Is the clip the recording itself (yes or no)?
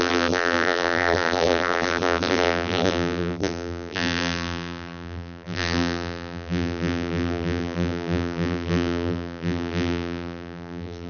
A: no